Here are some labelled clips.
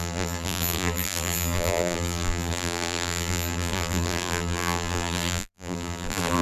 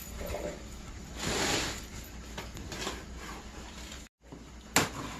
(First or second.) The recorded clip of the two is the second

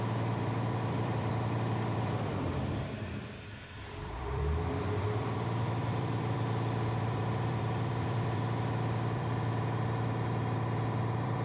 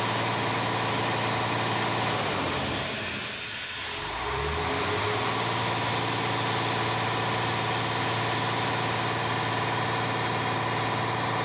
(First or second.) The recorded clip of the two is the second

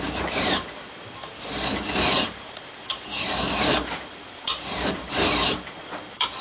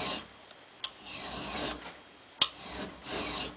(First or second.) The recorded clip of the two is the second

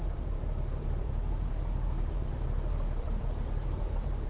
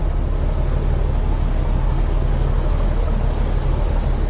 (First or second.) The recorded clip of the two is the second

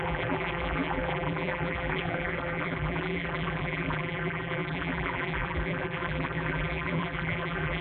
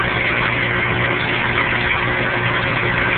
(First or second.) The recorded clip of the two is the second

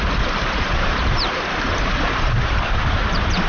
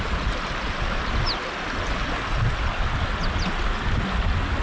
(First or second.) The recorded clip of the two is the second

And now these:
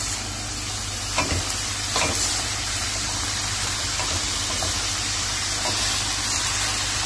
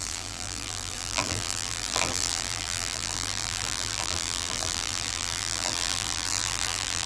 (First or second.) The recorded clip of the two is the first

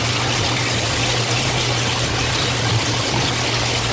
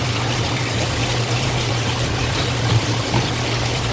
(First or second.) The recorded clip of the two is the first